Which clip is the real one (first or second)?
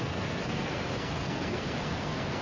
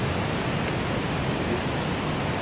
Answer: second